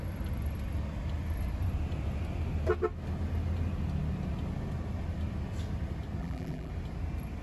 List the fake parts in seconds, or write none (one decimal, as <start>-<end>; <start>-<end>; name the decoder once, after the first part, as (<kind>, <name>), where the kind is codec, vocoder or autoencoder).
6.2-6.7 (vocoder, BigVGAN v2)